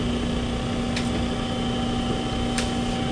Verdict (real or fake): real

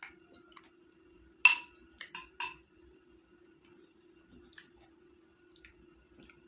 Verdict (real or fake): real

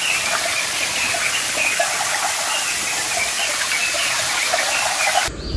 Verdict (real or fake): real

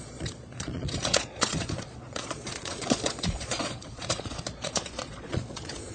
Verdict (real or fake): fake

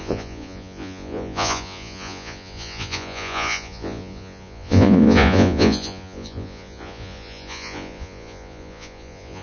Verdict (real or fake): fake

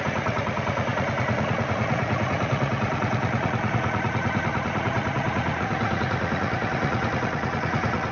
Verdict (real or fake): fake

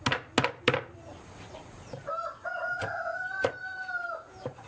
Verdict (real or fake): real